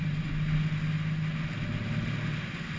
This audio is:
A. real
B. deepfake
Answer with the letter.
A